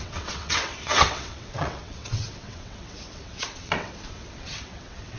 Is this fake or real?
fake